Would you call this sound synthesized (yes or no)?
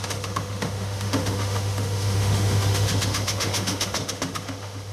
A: yes